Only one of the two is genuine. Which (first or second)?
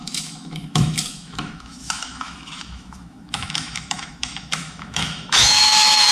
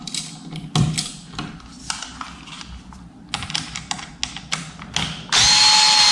second